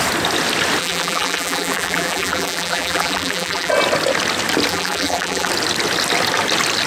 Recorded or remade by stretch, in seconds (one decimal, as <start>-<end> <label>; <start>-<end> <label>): 0.0-0.8 recorded; 0.8-3.7 remade; 3.7-4.7 recorded; 4.7-5.5 remade; 5.5-6.9 recorded